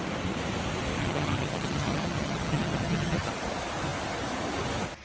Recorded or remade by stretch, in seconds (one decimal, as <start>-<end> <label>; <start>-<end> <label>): 0.0-1.0 recorded; 1.0-3.3 remade; 3.3-5.0 recorded